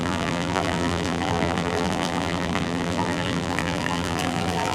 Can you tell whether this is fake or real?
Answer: fake